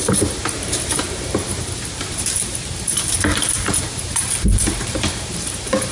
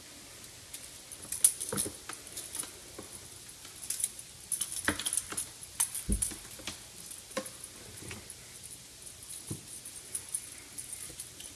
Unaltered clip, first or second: second